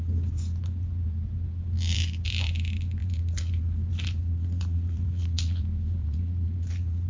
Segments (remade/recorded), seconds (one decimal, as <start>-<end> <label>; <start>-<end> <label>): 0.0-3.0 recorded; 3.0-3.5 remade; 3.5-4.2 recorded; 4.2-5.6 remade; 5.6-6.0 recorded; 6.0-7.1 remade